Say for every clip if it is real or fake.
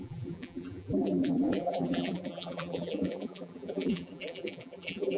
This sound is fake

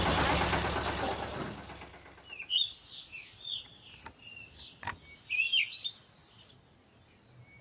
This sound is real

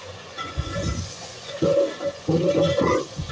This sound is fake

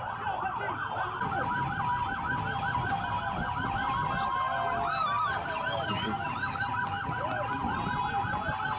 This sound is real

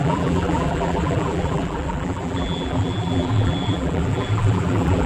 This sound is fake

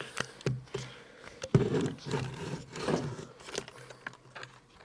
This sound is real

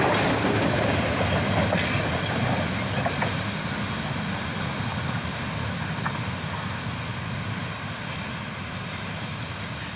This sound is real